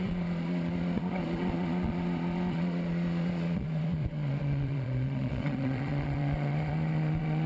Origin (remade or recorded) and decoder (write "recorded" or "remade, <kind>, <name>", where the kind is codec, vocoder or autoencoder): remade, vocoder, Vocos